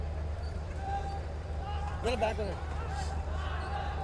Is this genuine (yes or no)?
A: no